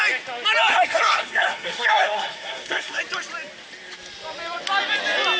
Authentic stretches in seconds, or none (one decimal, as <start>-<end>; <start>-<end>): 0.0-0.7; 3.0-5.4